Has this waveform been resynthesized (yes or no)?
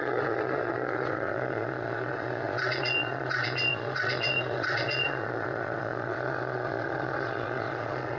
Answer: yes